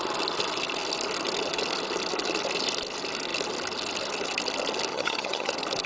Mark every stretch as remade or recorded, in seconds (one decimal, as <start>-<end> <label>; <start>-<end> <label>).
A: 0.0-4.9 recorded; 4.9-5.5 remade; 5.5-5.9 recorded